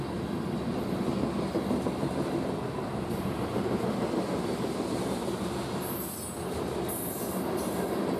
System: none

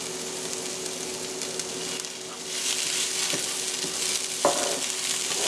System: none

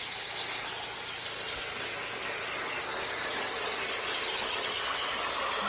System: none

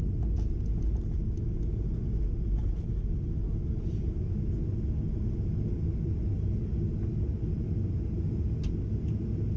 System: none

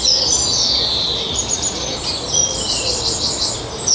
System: none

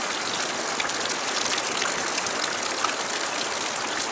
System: none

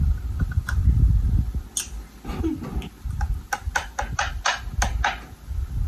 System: none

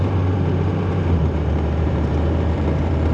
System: vocoder, BigVGAN v2